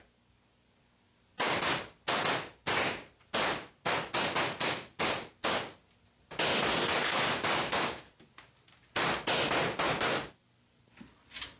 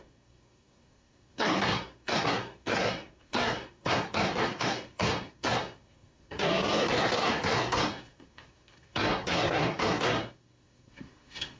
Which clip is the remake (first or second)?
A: second